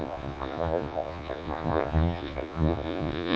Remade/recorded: remade